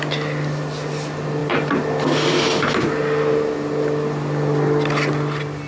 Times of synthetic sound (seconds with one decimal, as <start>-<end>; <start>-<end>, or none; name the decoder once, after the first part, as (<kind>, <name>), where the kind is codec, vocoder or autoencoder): none